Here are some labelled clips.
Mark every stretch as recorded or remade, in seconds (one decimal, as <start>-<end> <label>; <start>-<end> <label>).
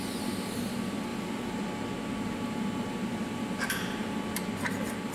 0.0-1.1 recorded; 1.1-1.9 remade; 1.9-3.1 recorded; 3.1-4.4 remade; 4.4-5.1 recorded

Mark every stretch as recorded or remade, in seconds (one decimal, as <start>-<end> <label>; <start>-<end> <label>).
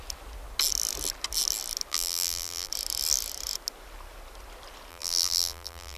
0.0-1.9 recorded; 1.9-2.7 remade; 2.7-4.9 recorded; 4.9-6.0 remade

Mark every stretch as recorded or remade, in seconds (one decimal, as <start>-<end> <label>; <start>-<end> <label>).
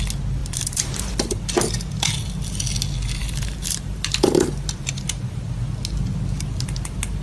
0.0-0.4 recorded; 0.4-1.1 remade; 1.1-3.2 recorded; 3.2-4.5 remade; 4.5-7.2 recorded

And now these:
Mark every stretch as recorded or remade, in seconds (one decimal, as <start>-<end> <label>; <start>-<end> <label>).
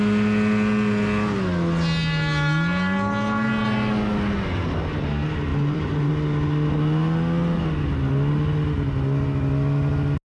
0.0-5.5 recorded; 5.5-6.1 remade; 6.1-10.3 recorded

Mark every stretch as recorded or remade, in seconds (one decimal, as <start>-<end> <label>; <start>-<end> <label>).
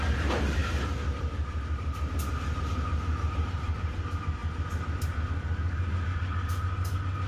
0.0-0.6 recorded; 0.6-2.3 remade; 2.3-7.3 recorded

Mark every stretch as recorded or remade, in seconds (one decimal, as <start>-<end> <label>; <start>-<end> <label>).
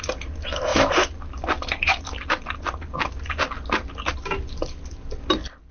0.0-5.7 recorded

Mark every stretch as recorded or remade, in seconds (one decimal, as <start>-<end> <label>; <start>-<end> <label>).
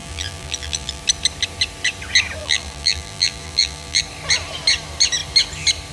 0.0-1.0 remade; 1.0-2.4 recorded; 2.4-4.0 remade; 4.0-5.9 recorded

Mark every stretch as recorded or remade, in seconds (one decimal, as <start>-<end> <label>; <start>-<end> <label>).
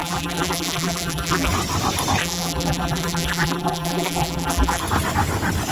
0.0-1.5 remade; 1.5-2.2 recorded; 2.2-4.8 remade; 4.8-5.7 recorded